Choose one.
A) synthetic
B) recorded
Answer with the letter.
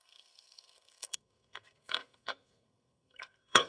A